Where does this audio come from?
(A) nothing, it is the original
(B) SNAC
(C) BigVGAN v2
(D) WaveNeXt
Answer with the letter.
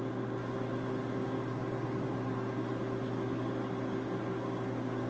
A